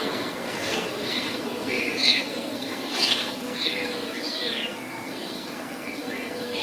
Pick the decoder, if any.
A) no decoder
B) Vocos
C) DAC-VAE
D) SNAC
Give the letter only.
D